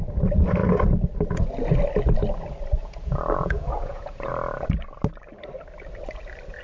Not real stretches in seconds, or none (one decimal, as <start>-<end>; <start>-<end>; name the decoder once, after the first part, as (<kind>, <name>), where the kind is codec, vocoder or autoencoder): 2.8-4.3 (vocoder, Vocos)